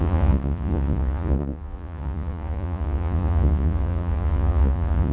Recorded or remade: remade